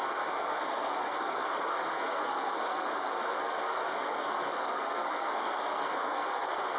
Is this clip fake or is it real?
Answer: fake